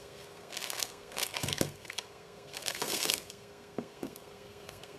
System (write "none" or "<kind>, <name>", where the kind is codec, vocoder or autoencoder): codec, SNAC